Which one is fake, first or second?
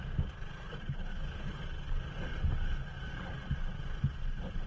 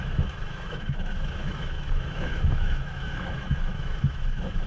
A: second